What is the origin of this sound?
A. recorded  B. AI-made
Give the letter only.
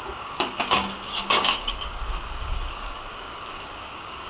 B